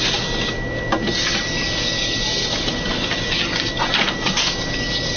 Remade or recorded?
recorded